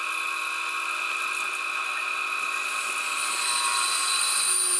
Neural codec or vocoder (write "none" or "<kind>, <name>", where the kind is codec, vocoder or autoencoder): none